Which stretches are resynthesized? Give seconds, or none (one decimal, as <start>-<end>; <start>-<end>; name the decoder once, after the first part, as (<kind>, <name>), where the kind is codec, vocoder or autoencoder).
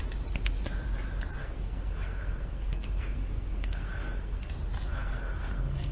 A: 1.4-4.5 (codec, SNAC); 4.9-5.9